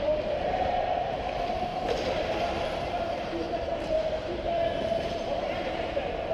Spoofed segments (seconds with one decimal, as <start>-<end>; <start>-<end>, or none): 0.0-6.3